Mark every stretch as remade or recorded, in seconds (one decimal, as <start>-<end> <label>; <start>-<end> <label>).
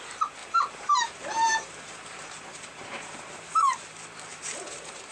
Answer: 0.0-0.4 recorded; 0.4-3.5 remade; 3.5-4.3 recorded; 4.3-5.1 remade